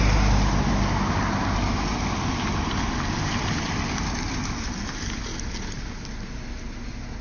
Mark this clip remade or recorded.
recorded